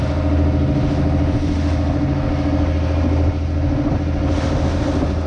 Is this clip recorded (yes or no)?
yes